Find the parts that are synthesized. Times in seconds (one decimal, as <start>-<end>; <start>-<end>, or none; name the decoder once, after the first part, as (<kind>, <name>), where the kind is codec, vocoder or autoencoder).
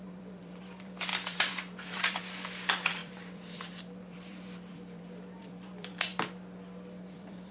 0.0-6.1 (vocoder, BigVGAN v2); 7.1-7.5